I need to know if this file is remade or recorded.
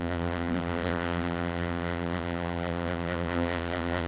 remade